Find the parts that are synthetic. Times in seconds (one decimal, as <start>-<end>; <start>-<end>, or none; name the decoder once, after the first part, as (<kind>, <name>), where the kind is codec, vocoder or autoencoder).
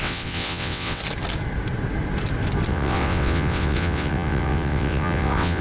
0.0-1.0 (vocoder, WaveNeXt); 2.7-5.6